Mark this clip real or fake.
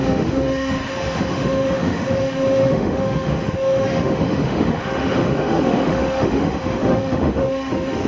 fake